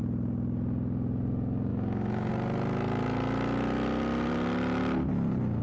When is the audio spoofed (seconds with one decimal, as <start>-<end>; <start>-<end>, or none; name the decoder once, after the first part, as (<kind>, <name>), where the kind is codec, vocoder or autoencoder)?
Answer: 1.7-2.3 (autoencoder, DAC-VAE)